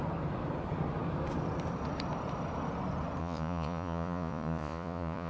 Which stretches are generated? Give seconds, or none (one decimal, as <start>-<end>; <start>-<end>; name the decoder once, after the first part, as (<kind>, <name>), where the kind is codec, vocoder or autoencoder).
3.2-5.3 (vocoder, Vocos)